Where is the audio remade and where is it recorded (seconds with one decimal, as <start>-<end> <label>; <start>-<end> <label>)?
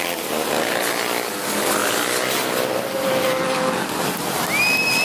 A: 0.0-5.0 recorded